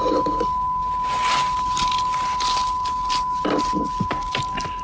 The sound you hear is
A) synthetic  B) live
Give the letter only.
B